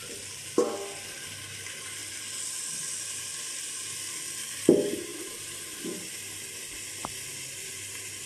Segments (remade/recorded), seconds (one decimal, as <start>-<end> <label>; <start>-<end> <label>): 0.0-5.1 recorded; 5.1-6.5 remade; 6.5-8.3 recorded